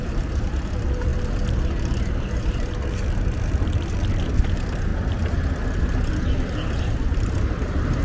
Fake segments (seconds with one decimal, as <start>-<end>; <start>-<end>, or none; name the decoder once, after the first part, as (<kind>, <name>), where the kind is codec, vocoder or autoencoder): 0.0-1.1 (vocoder, BigVGAN v2); 4.5-4.9; 6.8-8.0